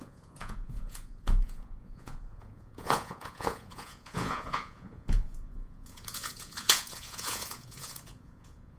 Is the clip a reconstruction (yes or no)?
yes